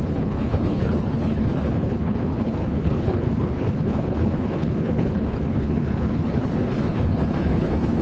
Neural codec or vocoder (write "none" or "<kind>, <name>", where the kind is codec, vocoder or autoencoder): codec, HILCodec